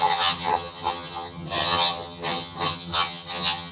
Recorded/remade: remade